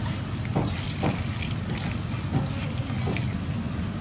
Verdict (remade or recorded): recorded